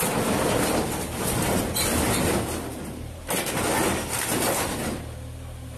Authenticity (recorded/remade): recorded